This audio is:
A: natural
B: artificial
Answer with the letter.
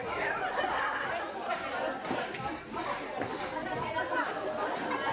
A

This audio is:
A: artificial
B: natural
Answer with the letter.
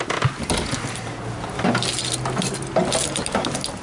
B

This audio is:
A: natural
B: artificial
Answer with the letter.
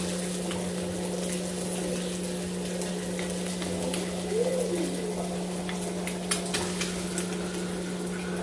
A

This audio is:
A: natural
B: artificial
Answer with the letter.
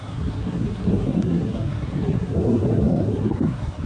B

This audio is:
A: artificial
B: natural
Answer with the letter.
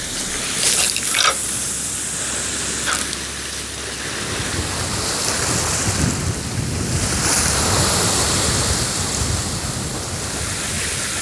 B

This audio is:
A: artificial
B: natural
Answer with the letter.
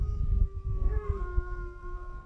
A